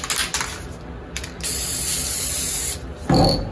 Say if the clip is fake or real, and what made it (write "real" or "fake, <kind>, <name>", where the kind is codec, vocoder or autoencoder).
real